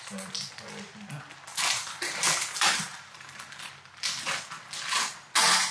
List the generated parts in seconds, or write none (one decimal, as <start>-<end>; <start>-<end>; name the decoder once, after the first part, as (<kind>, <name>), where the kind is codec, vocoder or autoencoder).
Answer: 1.5-3.7 (vocoder, BigVGAN v2)